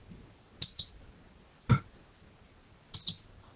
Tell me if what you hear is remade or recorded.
recorded